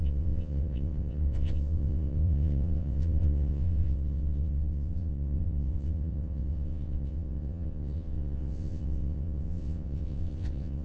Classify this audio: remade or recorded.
remade